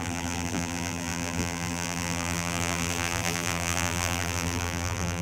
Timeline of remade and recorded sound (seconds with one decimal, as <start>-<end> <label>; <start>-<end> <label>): 0.0-5.2 remade